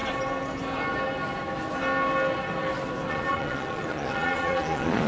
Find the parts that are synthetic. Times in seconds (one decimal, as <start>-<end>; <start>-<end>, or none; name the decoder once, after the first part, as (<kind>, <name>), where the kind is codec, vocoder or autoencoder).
3.1-5.1 (vocoder, Vocos)